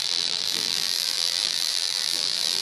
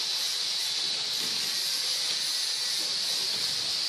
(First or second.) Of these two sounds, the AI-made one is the first